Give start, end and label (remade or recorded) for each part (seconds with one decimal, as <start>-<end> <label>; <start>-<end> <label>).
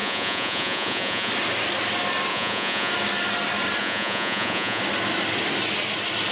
0.0-1.3 remade; 1.3-2.3 recorded; 2.3-2.9 remade; 2.9-3.8 recorded; 3.8-4.8 remade; 4.8-6.3 recorded